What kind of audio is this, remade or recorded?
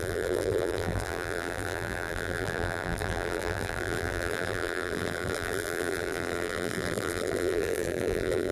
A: remade